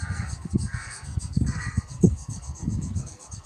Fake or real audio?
fake